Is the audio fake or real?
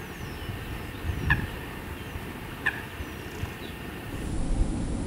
real